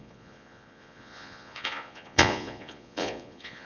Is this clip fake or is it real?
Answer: fake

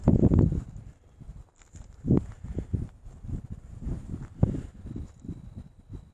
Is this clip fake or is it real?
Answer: real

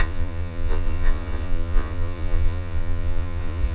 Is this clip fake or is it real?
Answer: fake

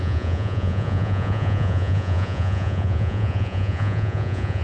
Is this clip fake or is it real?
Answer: fake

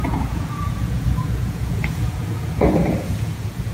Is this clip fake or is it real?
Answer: fake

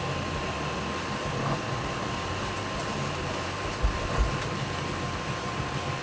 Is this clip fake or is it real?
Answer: real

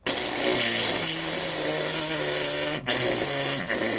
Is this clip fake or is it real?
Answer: real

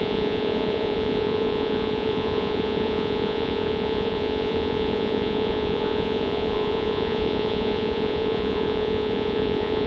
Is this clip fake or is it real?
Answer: fake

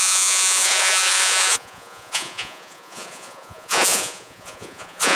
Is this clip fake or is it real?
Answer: fake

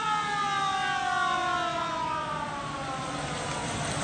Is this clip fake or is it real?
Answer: real